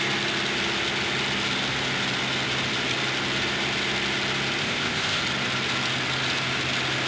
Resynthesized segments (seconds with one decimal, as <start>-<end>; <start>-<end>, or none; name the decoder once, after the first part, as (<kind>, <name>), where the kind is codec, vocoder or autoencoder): 4.6-5.2 (codec, ZipCodec)

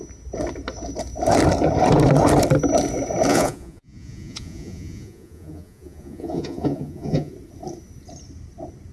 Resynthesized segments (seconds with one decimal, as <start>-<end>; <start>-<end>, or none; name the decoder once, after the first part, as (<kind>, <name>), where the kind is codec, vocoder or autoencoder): 3.3-7.3 (vocoder, Vocos)

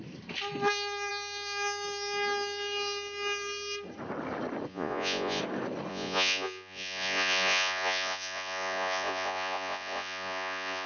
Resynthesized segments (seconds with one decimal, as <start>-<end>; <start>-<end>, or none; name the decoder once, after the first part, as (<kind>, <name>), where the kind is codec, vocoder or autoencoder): 4.7-5.4 (vocoder, Vocos); 5.9-10.9

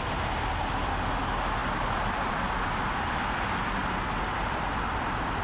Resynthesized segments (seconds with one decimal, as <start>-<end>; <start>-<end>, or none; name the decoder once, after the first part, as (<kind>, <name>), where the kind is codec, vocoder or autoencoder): none